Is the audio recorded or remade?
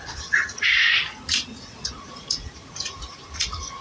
remade